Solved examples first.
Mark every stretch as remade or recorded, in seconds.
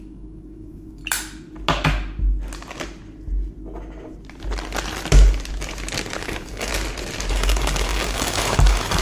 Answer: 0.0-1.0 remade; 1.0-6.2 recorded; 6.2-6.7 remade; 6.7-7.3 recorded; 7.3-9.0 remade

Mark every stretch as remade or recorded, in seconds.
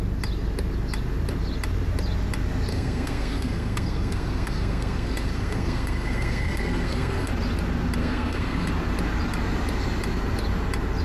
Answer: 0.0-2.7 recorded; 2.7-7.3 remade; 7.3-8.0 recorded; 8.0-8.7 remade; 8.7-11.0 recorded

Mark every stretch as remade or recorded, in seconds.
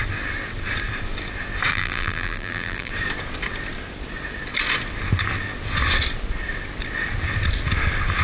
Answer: 0.0-1.7 recorded; 1.7-2.9 remade; 2.9-8.2 recorded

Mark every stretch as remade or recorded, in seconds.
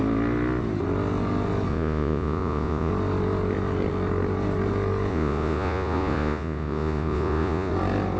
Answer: 0.0-1.7 recorded; 1.7-2.9 remade; 2.9-5.1 recorded; 5.1-7.7 remade; 7.7-8.2 recorded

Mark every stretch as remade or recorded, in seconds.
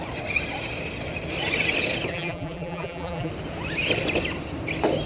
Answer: 0.0-2.1 recorded; 2.1-3.3 remade; 3.3-5.1 recorded